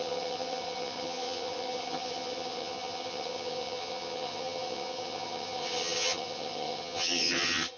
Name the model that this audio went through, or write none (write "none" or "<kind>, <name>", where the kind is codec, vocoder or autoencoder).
vocoder, HiFi-GAN